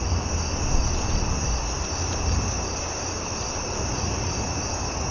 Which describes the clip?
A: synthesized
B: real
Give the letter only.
B